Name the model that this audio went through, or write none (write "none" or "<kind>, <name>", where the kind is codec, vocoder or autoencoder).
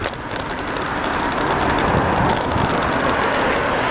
none